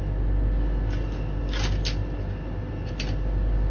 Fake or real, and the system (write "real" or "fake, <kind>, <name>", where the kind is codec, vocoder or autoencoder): real